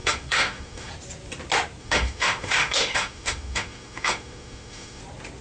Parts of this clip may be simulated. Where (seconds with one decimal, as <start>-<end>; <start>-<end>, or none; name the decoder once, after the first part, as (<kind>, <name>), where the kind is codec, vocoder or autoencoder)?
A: 0.0-0.9 (autoencoder, DAC-VAE); 1.8-5.0